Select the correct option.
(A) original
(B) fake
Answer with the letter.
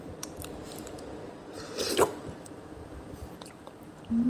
B